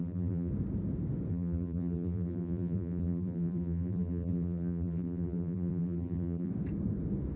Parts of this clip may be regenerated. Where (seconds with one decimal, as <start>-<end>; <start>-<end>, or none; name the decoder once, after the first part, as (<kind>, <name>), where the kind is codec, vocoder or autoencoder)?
0.0-0.5 (vocoder, BigVGAN v2); 1.3-6.5